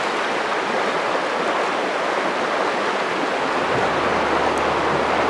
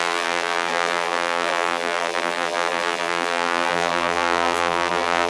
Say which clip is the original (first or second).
first